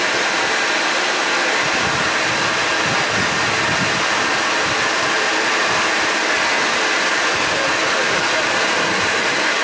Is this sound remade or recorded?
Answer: recorded